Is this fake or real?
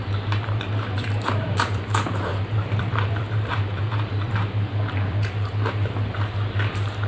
fake